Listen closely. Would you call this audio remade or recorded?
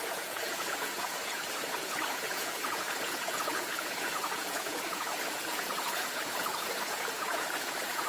remade